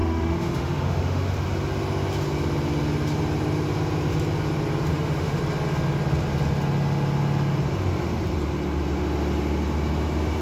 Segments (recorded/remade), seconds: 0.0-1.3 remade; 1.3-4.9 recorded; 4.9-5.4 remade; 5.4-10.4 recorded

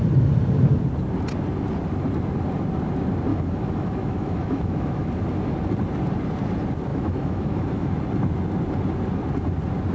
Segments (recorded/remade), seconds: 0.0-3.3 recorded; 3.3-5.1 remade; 5.1-6.9 recorded; 6.9-8.0 remade; 8.0-9.9 recorded

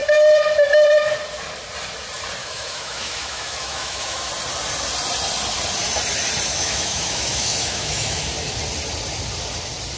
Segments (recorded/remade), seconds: 0.0-2.4 recorded; 2.4-4.3 remade; 4.3-6.5 recorded; 6.5-8.2 remade; 8.2-10.0 recorded

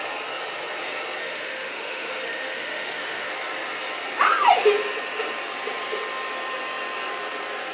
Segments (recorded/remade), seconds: 0.0-1.2 recorded; 1.2-3.3 remade; 3.3-7.7 recorded

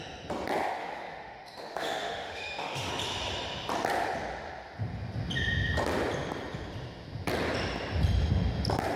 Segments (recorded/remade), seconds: 0.0-0.8 recorded; 0.8-2.9 remade; 2.9-9.0 recorded

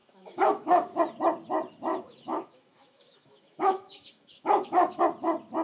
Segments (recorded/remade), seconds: 0.0-1.0 remade; 1.0-1.9 recorded; 1.9-5.0 remade; 5.0-5.6 recorded

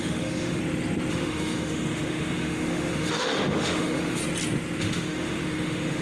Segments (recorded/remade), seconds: 0.0-0.6 remade; 0.6-1.1 recorded; 1.1-4.2 remade; 4.2-4.8 recorded; 4.8-6.0 remade

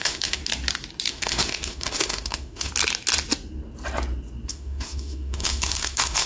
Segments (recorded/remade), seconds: 0.0-0.4 remade; 0.4-1.1 recorded; 1.1-2.7 remade; 2.7-4.5 recorded; 4.5-6.3 remade